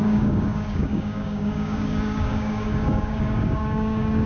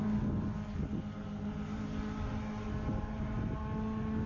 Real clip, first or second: second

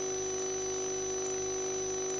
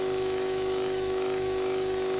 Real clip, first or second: first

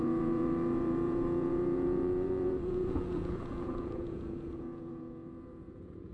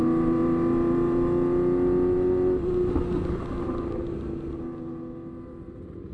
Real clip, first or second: second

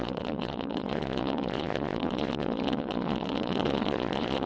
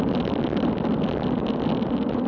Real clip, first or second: second